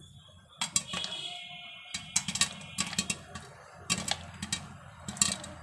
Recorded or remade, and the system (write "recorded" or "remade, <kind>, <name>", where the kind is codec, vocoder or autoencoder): recorded